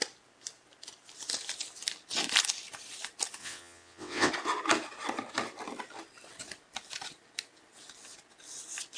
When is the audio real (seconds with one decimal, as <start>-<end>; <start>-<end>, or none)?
0.0-3.4; 4.3-9.0